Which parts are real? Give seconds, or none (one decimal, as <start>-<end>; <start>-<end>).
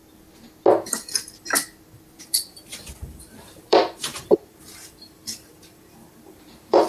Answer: 0.0-2.2